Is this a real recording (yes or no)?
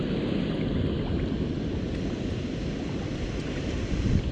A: yes